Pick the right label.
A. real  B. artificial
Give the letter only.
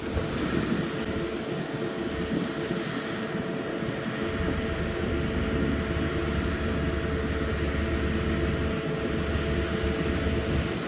A